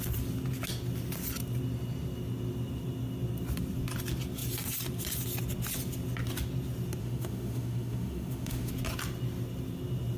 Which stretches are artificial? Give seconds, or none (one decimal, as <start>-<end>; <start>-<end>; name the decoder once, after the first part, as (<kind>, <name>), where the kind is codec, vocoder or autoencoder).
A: 7.0-8.7 (autoencoder, DAC-VAE)